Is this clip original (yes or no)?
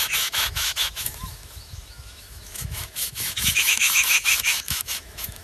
no